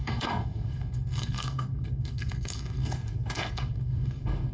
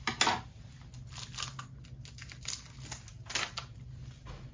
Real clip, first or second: second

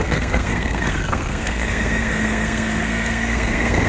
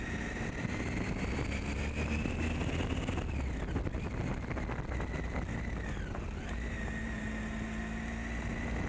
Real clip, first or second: second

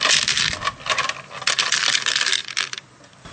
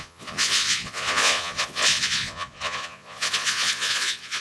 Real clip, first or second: first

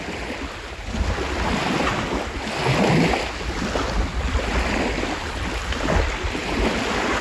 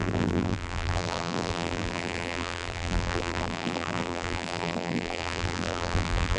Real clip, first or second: first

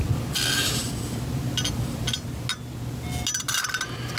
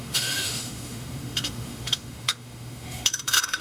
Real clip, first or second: first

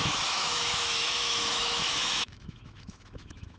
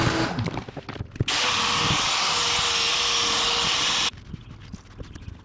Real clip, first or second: second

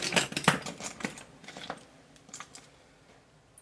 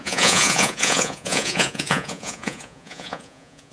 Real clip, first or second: first